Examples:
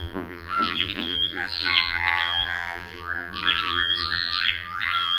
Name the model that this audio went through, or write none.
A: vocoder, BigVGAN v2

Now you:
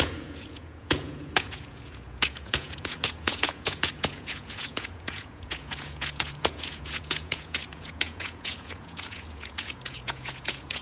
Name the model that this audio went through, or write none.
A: vocoder, Vocos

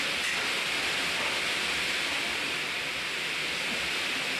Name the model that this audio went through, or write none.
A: none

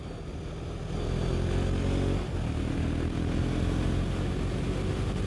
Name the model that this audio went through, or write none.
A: none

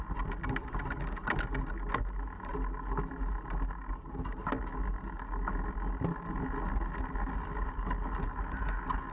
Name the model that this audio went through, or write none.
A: none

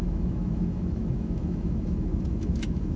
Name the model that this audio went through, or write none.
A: autoencoder, DAC-VAE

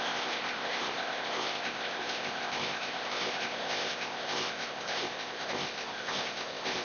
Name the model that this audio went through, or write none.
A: codec, ZipCodec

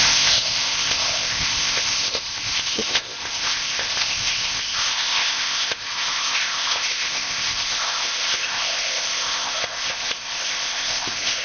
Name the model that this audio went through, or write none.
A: codec, ZipCodec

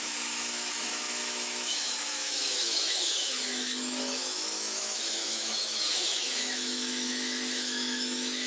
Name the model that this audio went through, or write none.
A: autoencoder, DAC-VAE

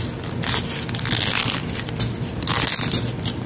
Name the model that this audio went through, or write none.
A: none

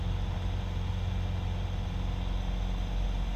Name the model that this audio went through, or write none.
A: none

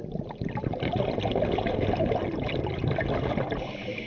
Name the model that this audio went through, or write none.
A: none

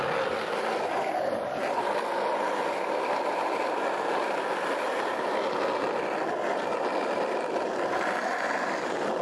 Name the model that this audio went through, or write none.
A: none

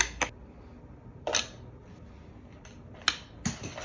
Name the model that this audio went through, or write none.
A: none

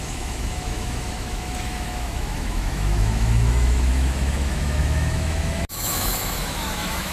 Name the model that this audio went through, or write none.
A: autoencoder, DAC-VAE